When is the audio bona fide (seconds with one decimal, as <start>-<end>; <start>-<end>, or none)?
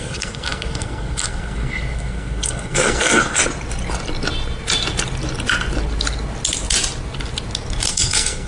3.4-7.9